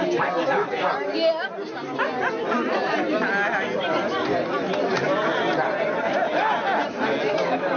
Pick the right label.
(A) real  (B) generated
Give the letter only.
A